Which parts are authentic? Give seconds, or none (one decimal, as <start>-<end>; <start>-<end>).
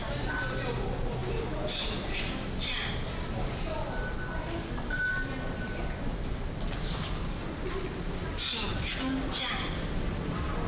0.0-10.7